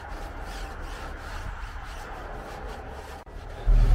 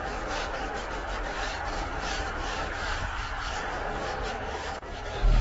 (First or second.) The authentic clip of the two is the first